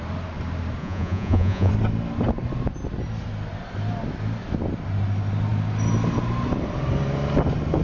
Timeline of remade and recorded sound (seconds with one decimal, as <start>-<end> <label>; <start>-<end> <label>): 0.0-0.8 recorded; 0.8-1.7 remade; 1.7-7.8 recorded